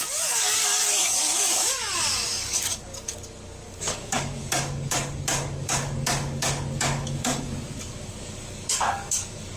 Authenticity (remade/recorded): remade